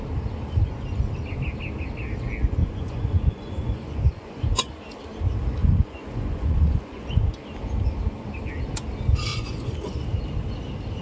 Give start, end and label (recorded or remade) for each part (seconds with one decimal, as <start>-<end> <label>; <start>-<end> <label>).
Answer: 0.0-2.6 recorded; 2.6-4.7 remade; 4.7-5.6 recorded; 5.6-7.2 remade; 7.2-9.3 recorded; 9.3-10.0 remade; 10.0-11.0 recorded